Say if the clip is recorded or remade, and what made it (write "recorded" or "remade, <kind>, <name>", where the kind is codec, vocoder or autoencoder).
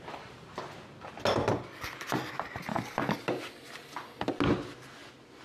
recorded